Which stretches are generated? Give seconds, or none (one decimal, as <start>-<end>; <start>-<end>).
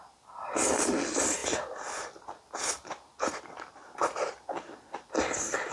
none